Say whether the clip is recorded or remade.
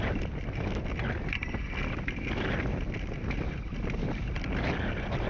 recorded